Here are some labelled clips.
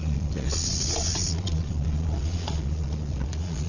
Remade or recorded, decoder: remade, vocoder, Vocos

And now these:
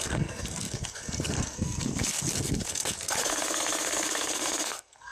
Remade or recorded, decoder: remade, codec, SNAC